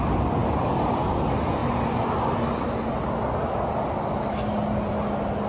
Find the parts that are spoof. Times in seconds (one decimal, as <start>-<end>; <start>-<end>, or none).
none